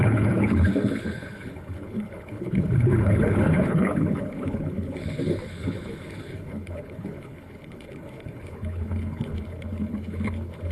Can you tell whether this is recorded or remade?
remade